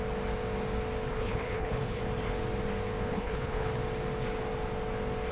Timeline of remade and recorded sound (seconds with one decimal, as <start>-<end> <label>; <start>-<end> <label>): 0.0-1.1 recorded; 1.1-2.0 remade; 2.0-3.1 recorded; 3.1-3.7 remade; 3.7-5.3 recorded